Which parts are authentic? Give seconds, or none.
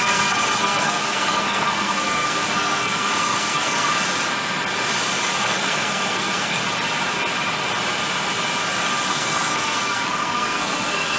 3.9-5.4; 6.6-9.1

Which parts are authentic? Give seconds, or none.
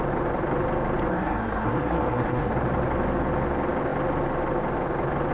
0.0-1.1; 2.5-5.3